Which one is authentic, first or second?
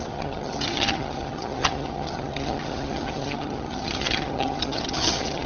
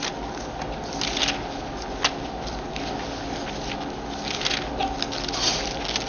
second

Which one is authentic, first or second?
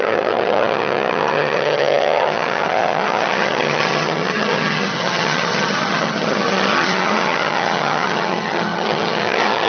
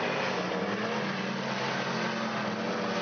second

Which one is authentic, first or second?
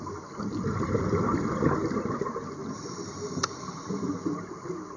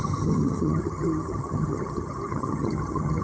first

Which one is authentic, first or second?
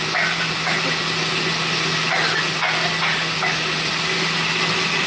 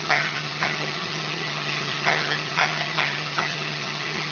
first